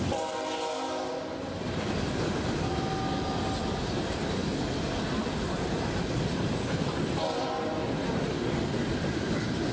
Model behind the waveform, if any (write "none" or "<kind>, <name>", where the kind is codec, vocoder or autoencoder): none